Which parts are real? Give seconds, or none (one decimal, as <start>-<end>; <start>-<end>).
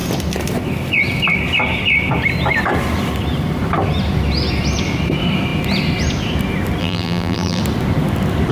0.0-6.8; 7.6-8.5